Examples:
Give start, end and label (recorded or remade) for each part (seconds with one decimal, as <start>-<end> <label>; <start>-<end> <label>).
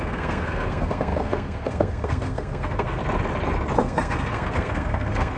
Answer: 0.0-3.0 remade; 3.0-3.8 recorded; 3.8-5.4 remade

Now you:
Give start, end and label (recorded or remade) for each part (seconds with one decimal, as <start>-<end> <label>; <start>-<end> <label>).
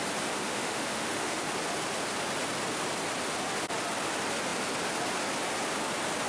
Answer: 0.0-0.4 recorded; 0.4-1.4 remade; 1.4-6.3 recorded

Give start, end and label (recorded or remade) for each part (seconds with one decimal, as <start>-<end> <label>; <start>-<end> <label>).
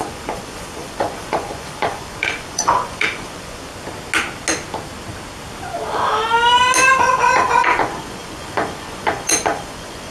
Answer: 0.0-3.7 remade; 3.7-7.0 recorded; 7.0-10.1 remade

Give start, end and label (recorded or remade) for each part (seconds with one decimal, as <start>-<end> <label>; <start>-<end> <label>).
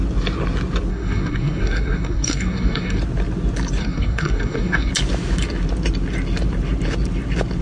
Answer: 0.0-0.9 recorded; 0.9-3.0 remade; 3.0-3.8 recorded; 3.8-4.9 remade; 4.9-7.6 recorded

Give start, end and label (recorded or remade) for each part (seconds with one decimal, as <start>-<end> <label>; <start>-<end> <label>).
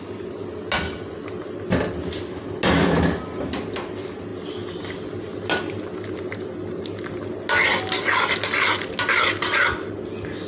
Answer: 0.0-10.5 recorded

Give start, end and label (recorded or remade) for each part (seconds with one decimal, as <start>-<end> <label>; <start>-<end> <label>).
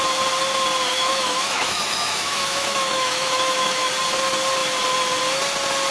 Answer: 0.0-0.9 recorded; 0.9-3.9 remade; 3.9-5.9 recorded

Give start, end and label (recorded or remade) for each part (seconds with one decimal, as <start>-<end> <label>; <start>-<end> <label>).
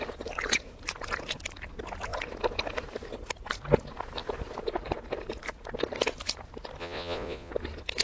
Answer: 0.0-6.8 recorded; 6.8-7.5 remade; 7.5-8.0 recorded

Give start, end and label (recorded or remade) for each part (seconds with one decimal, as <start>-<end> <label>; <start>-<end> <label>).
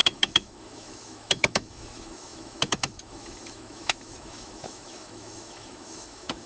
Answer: 0.0-6.5 remade